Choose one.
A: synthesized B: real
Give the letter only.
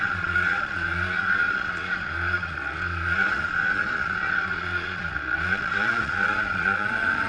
A